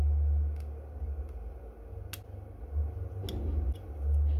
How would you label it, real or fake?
real